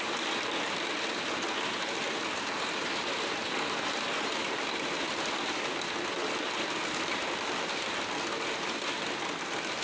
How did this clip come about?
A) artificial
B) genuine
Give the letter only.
B